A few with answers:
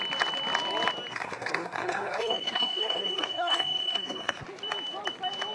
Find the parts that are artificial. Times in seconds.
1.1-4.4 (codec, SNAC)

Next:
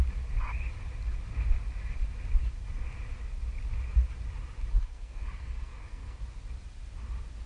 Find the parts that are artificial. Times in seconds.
4.8-6.2 (codec, SNAC)

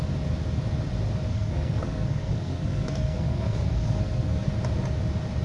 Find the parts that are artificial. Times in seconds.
1.3-4.5 (codec, SNAC)

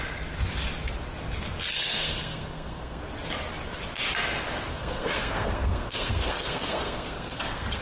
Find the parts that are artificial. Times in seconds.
1.7-3.0 (codec, SNAC); 4.7-7.8

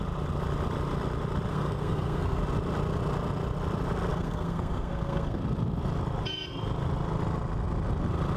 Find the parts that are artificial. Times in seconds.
1.5-2.4 (codec, SNAC); 4.1-5.4